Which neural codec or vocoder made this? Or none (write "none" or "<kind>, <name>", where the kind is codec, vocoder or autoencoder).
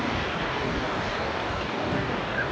codec, DAC